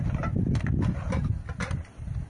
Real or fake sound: real